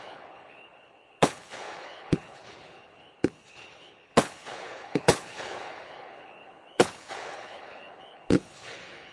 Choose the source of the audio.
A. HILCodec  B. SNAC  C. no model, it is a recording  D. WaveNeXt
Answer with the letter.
A